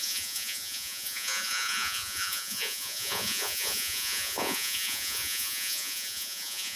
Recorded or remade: remade